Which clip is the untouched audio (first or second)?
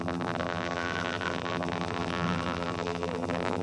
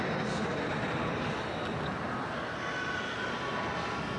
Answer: second